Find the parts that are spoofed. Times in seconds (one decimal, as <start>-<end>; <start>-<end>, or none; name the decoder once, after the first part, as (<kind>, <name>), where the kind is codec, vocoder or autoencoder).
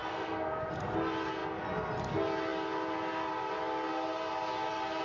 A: 0.0-0.7 (codec, SNAC)